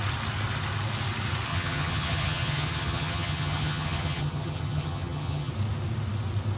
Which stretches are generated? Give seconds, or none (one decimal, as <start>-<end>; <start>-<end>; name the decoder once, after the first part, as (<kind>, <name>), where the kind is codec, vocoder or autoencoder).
1.5-5.5 (vocoder, HiFi-GAN)